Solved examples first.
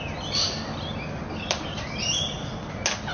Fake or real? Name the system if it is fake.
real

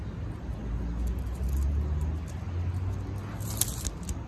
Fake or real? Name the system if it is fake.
real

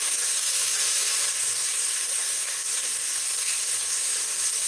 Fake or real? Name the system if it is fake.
fake, codec, DAC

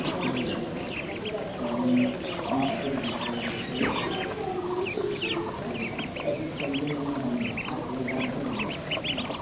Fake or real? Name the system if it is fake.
real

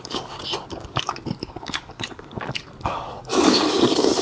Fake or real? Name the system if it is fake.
fake, codec, DAC